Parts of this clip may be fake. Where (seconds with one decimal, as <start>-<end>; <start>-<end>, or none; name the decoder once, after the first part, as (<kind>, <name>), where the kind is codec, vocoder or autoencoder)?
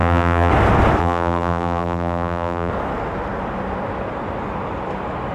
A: 0.0-0.5 (vocoder, BigVGAN v2); 1.0-2.7